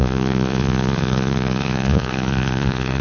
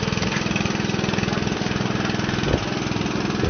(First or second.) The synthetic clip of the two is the first